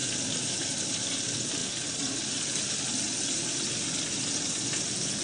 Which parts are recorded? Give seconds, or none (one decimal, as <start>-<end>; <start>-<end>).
0.0-5.2

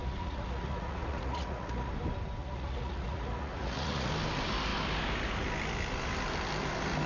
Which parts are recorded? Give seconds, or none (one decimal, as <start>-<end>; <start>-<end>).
1.9-2.4; 4.1-7.1

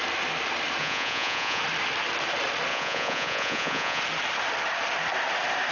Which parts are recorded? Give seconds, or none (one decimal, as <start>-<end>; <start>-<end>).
0.0-0.8; 1.6-2.7; 4.0-5.7

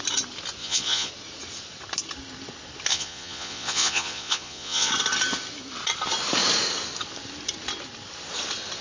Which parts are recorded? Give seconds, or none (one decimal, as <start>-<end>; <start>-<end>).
0.0-0.6; 1.1-2.9; 4.9-8.8